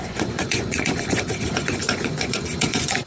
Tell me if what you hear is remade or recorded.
remade